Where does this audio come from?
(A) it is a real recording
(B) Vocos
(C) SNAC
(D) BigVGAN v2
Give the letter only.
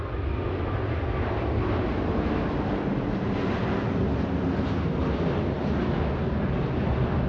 A